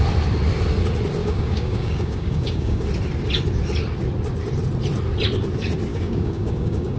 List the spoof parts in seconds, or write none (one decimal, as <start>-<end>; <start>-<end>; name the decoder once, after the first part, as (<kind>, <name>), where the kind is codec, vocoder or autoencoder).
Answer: 1.2-2.8 (codec, DAC); 5.9-7.0